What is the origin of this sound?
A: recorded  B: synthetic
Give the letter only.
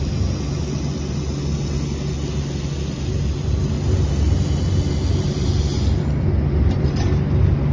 A